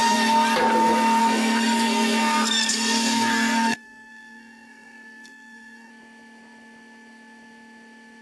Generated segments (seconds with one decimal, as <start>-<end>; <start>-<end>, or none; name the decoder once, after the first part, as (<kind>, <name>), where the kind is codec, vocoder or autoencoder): 1.2-5.9 (codec, SNAC)